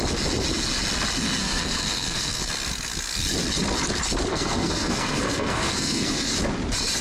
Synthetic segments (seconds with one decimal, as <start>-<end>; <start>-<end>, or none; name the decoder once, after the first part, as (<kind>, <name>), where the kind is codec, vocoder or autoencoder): 1.4-2.5 (codec, SNAC); 4.3-6.3